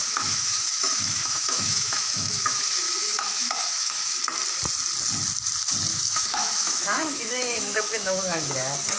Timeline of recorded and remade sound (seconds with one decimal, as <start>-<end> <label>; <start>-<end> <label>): 0.0-4.2 remade; 4.2-5.9 recorded; 5.9-8.5 remade; 8.5-9.0 recorded